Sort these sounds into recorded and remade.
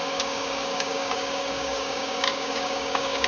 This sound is remade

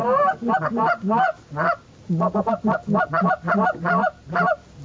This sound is recorded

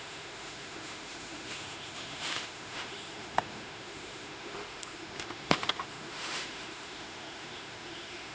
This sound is remade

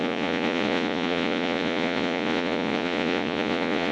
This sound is remade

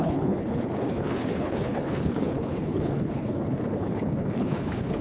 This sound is remade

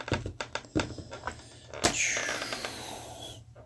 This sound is recorded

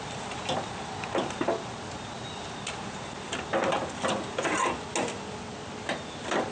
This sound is recorded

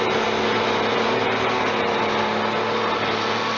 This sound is recorded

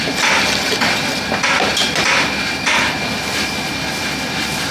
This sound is recorded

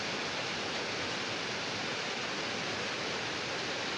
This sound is recorded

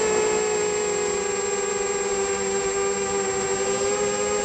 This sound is recorded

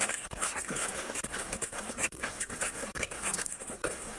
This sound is remade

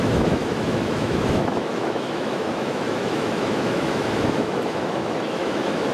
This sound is remade